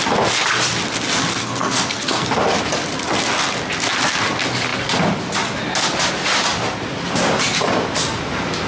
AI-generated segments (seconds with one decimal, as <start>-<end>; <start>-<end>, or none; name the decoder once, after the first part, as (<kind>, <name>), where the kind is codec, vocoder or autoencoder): 1.3-2.3 (codec, SNAC)